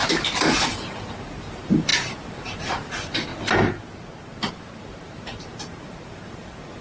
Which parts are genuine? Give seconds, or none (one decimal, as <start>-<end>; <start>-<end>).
3.3-4.5